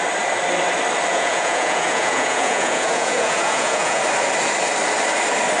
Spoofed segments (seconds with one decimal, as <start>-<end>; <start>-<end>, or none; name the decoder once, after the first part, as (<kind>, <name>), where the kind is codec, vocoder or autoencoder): 1.1-4.0 (vocoder, Vocos)

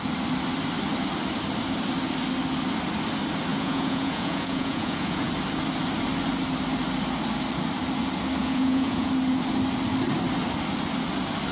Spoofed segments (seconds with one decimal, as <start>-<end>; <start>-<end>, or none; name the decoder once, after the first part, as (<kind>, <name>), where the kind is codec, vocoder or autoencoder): 3.5-5.3 (vocoder, Vocos); 8.4-9.1

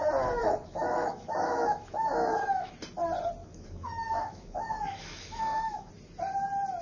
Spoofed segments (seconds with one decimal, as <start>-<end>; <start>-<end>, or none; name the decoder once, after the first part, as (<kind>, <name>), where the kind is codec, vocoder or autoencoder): 0.4-2.7 (autoencoder, DAC-VAE); 3.4-5.9

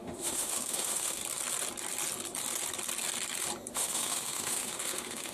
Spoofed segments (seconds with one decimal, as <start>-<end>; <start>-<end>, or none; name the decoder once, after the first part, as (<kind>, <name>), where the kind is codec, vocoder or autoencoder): 0.0-1.2 (autoencoder, DAC-VAE); 3.7-5.3